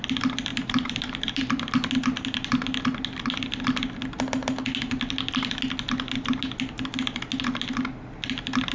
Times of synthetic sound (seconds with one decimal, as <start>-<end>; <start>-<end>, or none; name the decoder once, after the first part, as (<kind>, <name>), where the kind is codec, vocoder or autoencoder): 0.5-1.7 (vocoder, BigVGAN v2)